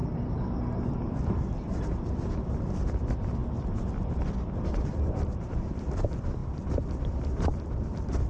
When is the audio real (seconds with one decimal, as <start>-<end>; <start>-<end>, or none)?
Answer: 3.4-4.7; 6.4-7.1